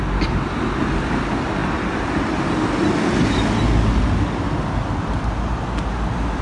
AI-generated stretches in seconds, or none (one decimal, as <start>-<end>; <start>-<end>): none